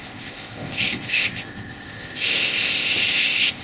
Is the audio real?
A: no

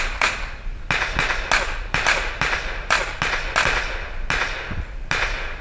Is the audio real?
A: yes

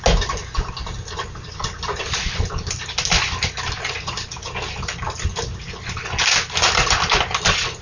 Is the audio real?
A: yes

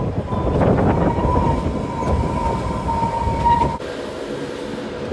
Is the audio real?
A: yes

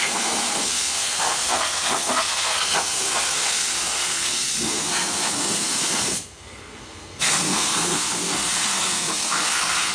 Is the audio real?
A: no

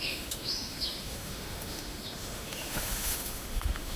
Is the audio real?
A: no